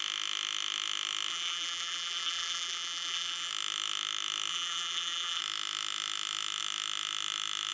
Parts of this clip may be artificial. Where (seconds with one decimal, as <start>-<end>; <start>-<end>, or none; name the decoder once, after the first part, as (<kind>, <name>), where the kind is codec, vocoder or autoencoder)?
1.3-3.5 (vocoder, BigVGAN v2); 4.5-5.4